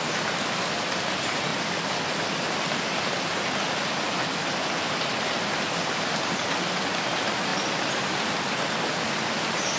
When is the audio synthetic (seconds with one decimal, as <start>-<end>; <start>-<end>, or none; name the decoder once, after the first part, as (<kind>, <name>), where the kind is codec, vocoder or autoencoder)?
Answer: none